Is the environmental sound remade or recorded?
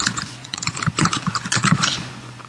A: remade